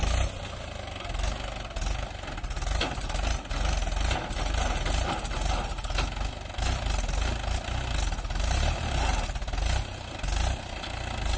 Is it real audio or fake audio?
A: real